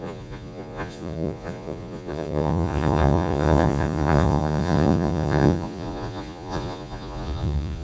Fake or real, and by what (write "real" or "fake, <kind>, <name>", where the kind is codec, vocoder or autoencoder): fake, vocoder, Vocos